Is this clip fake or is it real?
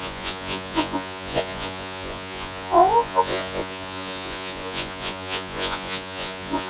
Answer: fake